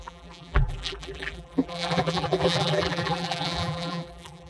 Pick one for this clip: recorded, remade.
remade